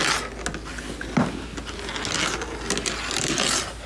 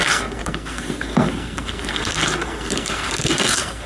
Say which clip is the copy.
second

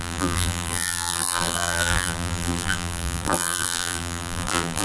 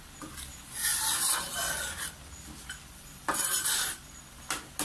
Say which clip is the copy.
first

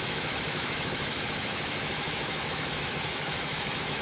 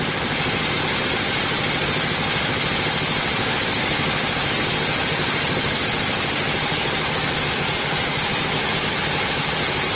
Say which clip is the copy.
first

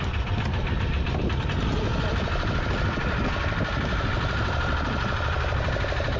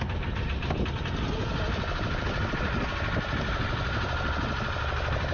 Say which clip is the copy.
first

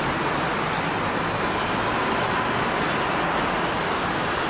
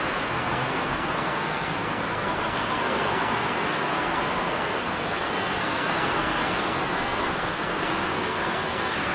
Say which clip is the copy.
second